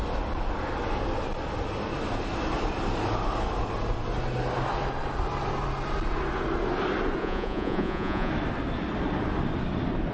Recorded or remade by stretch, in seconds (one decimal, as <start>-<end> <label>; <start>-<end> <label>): 0.0-7.2 recorded; 7.2-8.3 remade; 8.3-10.1 recorded